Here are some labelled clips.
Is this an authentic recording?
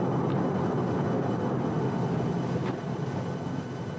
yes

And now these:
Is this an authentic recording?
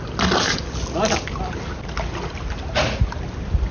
yes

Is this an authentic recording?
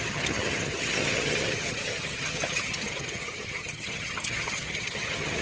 no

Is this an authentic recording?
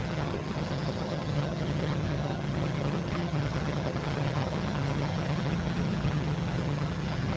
no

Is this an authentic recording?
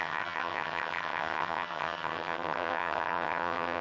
no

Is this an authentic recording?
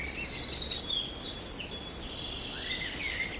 yes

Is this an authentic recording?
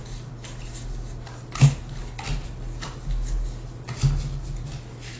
yes